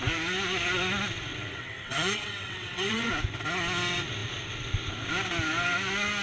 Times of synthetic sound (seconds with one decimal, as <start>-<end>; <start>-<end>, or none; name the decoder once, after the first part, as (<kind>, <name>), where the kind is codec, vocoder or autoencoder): 1.3-3.1 (vocoder, WaveNeXt)